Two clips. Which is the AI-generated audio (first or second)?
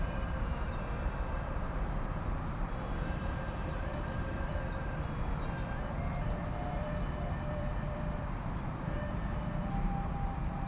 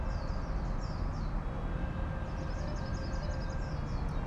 first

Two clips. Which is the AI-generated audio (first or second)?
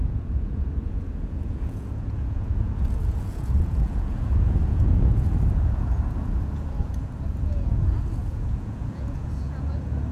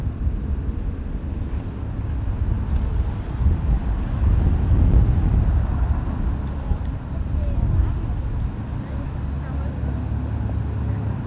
first